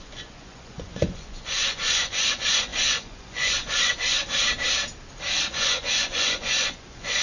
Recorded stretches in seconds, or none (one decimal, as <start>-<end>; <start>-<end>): 4.2-5.4